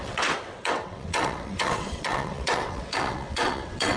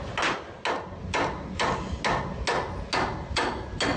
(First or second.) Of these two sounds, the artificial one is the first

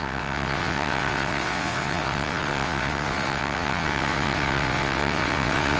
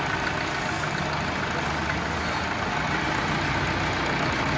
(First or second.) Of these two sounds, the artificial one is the first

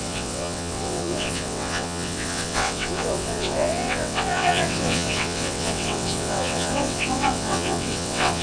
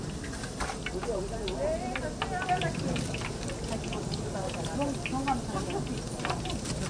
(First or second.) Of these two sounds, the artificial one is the first